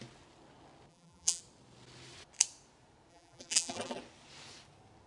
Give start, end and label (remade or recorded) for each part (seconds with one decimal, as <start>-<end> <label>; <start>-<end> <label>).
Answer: 0.0-0.9 recorded; 0.9-1.4 remade; 1.4-3.1 recorded; 3.1-4.0 remade; 4.0-5.1 recorded